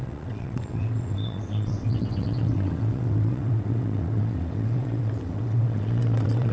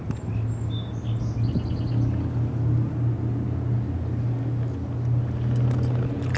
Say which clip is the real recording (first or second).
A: second